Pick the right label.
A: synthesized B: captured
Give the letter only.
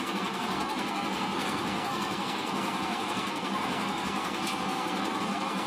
A